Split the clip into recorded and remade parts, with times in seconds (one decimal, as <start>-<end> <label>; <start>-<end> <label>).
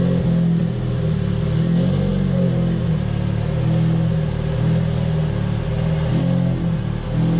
0.0-0.6 recorded; 0.6-1.4 remade; 1.4-7.4 recorded